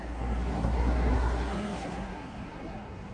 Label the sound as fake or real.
fake